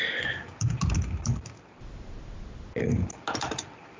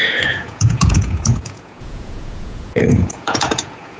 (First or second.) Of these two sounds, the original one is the first